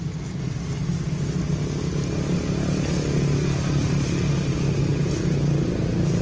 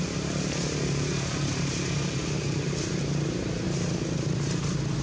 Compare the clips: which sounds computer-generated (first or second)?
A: second